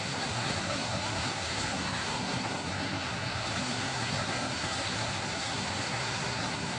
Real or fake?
fake